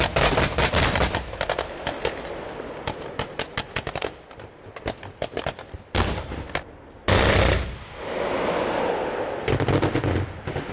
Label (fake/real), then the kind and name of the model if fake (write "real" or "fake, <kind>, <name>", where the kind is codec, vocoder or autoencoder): real